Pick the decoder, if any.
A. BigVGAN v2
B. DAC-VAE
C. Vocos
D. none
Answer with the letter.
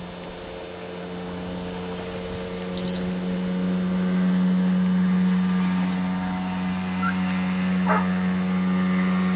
D